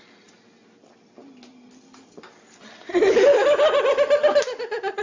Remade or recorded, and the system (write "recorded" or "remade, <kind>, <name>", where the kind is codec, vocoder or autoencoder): recorded